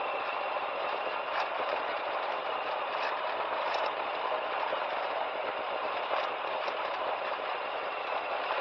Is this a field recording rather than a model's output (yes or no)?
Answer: no